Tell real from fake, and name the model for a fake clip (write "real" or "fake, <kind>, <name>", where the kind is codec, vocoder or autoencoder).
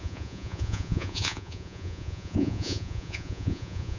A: fake, vocoder, Vocos